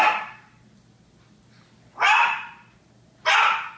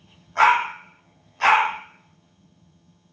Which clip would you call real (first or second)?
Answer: first